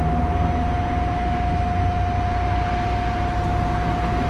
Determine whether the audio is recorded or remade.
recorded